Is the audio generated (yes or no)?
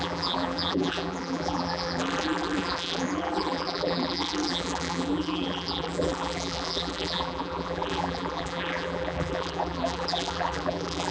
yes